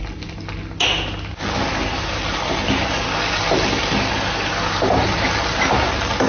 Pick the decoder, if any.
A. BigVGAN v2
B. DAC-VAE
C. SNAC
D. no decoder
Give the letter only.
D